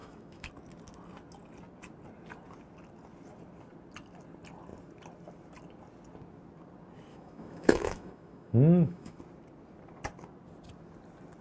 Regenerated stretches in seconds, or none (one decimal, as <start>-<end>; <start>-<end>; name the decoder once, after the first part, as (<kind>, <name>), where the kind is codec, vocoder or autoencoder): 0.0-0.5 (autoencoder, DAC-VAE); 7.1-9.2